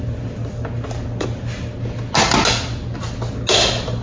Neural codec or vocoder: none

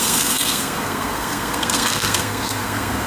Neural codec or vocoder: codec, SNAC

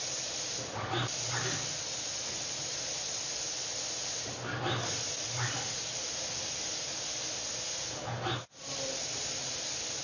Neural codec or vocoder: none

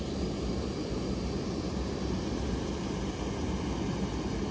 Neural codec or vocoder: none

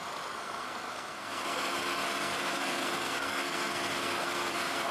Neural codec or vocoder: codec, SNAC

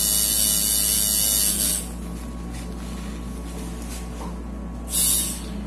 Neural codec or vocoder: none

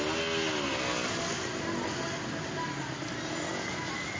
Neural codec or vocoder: none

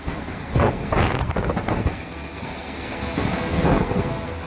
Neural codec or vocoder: codec, SNAC